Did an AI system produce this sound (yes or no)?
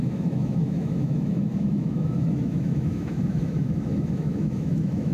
yes